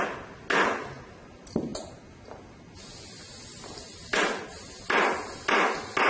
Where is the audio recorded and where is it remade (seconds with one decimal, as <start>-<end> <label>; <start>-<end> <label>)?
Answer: 0.0-6.1 recorded